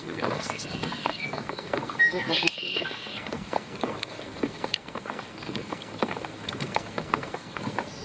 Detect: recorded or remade remade